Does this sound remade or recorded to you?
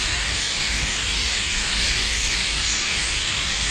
remade